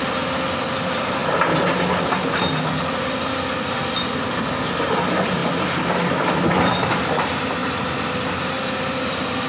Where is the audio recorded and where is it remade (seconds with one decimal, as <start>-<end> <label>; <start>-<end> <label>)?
0.0-9.5 recorded